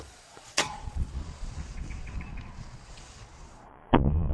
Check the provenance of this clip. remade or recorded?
remade